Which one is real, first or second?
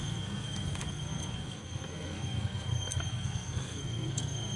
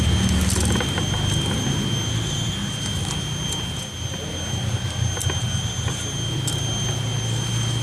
second